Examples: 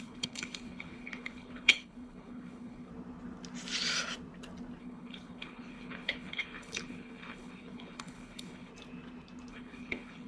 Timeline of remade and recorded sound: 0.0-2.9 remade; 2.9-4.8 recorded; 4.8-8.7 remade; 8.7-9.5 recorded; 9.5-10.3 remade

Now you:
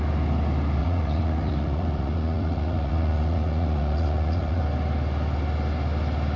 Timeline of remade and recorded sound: 0.0-0.8 recorded; 0.8-4.6 remade; 4.6-6.4 recorded

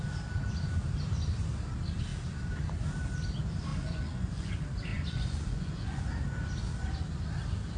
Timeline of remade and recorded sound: 0.0-3.7 recorded; 3.7-4.5 remade; 4.5-4.9 recorded; 4.9-6.0 remade; 6.0-7.8 recorded

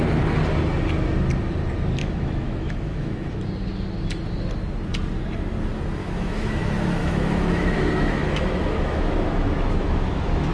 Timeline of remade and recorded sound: 0.0-2.0 recorded; 2.0-3.4 remade; 3.4-6.0 recorded; 6.0-6.6 remade; 6.6-7.0 recorded; 7.0-10.5 remade

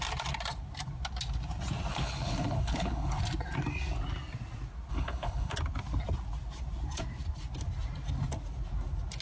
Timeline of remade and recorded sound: 0.0-1.9 recorded; 1.9-3.2 remade; 3.2-4.9 recorded; 4.9-5.5 remade; 5.5-9.2 recorded

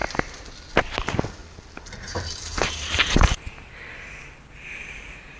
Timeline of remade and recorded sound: 0.0-1.4 recorded; 1.4-3.5 remade; 3.5-5.4 recorded

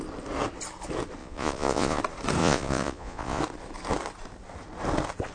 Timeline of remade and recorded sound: 0.0-1.2 recorded; 1.2-2.0 remade; 2.0-2.4 recorded; 2.4-3.4 remade; 3.4-5.3 recorded